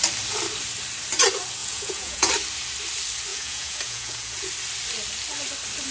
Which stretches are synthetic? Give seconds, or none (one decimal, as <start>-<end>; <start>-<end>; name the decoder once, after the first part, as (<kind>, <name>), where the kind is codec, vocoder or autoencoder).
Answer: 1.6-2.3 (vocoder, Vocos); 3.3-4.5